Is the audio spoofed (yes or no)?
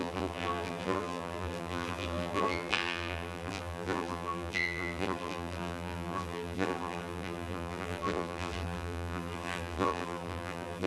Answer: yes